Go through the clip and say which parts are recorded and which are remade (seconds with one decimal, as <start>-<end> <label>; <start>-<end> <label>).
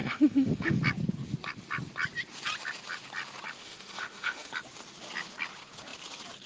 0.0-0.8 remade; 0.8-3.6 recorded; 3.6-4.5 remade; 4.5-6.5 recorded